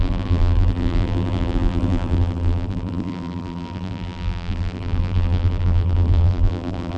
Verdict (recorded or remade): remade